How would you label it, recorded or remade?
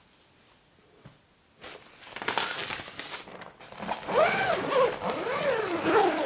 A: recorded